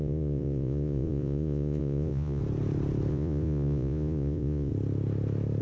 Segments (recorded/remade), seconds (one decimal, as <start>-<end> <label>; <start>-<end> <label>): 0.0-2.4 remade; 2.4-3.1 recorded; 3.1-4.7 remade; 4.7-5.6 recorded